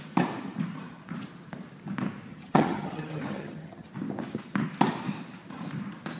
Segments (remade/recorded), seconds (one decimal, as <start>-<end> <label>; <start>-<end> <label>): 0.0-2.3 recorded; 2.3-3.9 remade; 3.9-6.2 recorded